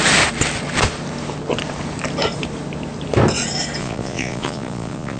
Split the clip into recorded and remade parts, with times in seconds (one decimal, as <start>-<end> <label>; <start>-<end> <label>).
0.0-3.8 recorded; 3.8-5.2 remade